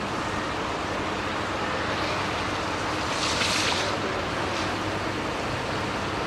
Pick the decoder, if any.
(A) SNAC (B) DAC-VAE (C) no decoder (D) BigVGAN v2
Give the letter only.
C